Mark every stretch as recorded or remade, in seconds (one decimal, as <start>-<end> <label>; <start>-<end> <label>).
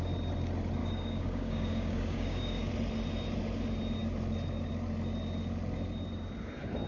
0.0-0.8 recorded; 0.8-2.7 remade; 2.7-6.9 recorded